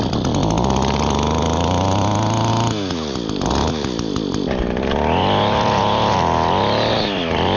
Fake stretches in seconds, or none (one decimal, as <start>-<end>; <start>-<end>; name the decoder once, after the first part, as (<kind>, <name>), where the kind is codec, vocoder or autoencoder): none